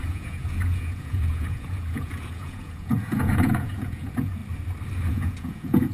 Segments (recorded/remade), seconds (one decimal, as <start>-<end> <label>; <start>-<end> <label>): 0.0-4.4 remade; 4.4-5.1 recorded; 5.1-5.9 remade